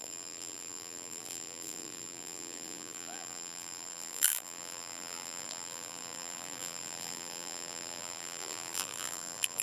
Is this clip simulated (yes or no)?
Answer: yes